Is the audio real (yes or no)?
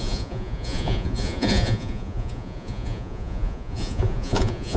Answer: no